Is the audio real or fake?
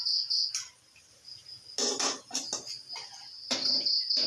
real